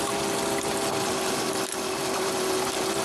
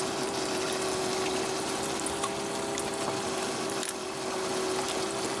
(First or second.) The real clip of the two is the second